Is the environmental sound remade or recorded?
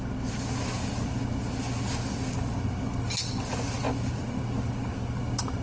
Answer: recorded